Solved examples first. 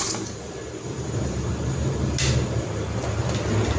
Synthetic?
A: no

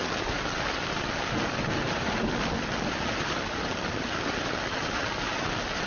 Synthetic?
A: no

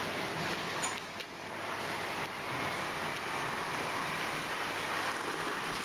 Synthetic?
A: no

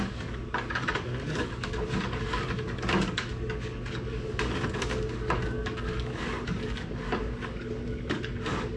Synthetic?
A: yes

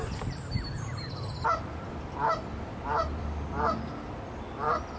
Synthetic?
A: no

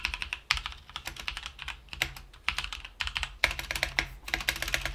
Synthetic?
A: no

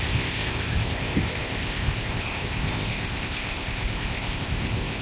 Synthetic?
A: yes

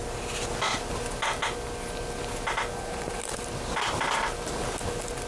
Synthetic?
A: no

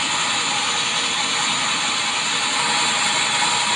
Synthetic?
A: no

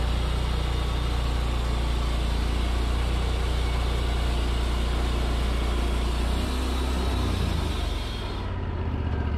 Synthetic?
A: no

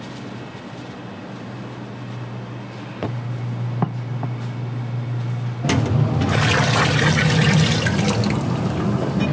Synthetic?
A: no